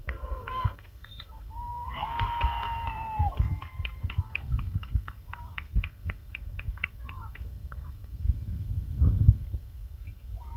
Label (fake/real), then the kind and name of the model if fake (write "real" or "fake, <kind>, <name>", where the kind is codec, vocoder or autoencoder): fake, codec, SNAC